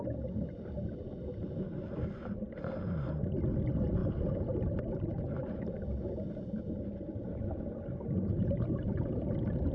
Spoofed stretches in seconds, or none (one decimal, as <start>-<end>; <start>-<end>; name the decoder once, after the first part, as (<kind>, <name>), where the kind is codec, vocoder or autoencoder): 4.0-5.8 (vocoder, BigVGAN v2); 8.3-9.7